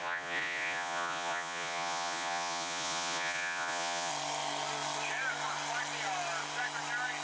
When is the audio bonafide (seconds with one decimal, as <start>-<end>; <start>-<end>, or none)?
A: 4.1-7.2